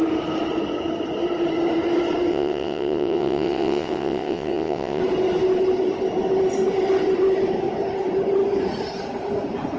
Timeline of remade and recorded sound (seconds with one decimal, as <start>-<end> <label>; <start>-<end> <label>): 0.0-2.3 recorded; 2.3-5.0 remade; 5.0-9.8 recorded